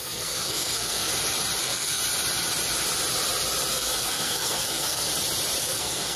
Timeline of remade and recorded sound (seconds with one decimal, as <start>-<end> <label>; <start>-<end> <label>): 0.0-1.1 remade; 1.1-1.6 recorded; 1.6-2.0 remade; 2.0-3.7 recorded; 3.7-5.1 remade; 5.1-5.6 recorded; 5.6-6.2 remade